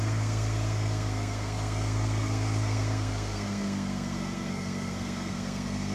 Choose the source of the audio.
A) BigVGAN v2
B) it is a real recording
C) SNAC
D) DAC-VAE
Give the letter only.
C